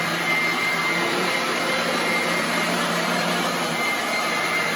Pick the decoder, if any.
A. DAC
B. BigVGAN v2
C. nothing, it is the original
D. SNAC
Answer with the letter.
B